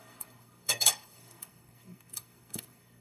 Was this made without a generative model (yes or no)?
no